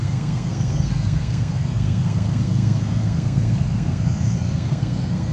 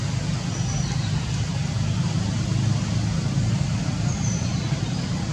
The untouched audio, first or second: second